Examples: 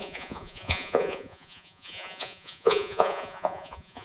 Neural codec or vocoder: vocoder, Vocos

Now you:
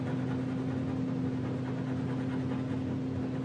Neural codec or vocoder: none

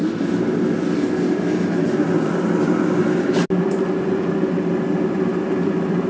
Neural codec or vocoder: none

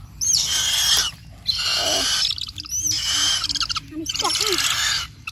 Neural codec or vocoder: none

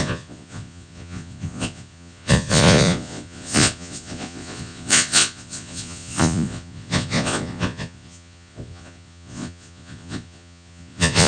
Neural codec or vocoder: vocoder, Vocos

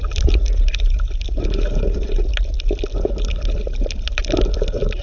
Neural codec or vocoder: none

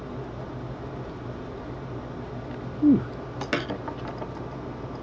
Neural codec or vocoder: none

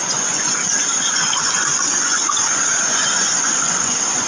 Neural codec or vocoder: vocoder, Vocos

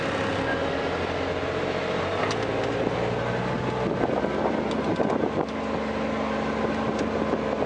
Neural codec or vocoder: none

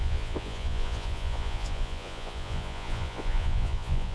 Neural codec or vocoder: vocoder, Vocos